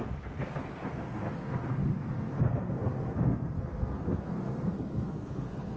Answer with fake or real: fake